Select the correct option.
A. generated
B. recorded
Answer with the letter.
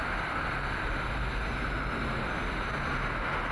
B